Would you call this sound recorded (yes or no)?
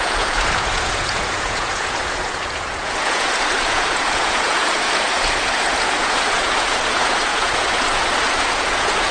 no